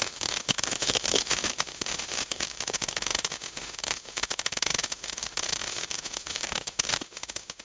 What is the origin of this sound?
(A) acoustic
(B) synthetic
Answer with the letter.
B